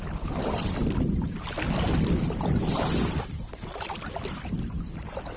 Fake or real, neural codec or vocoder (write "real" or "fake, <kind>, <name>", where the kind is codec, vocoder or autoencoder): real